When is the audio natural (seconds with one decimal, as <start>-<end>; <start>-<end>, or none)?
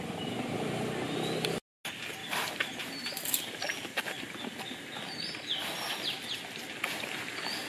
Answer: 0.0-2.2; 2.8-7.7